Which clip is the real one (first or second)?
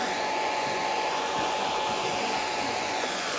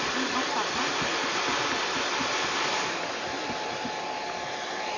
second